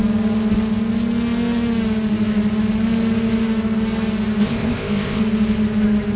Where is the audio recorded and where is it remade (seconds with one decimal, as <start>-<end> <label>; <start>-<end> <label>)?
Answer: 0.0-4.4 recorded; 4.4-5.2 remade; 5.2-6.2 recorded